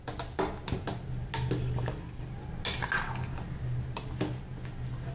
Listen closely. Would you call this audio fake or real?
real